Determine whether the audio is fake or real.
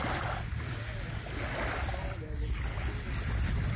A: real